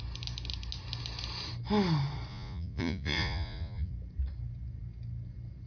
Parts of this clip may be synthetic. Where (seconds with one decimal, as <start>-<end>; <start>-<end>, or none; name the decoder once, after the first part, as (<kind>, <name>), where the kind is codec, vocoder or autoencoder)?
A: 2.3-3.9 (vocoder, Vocos)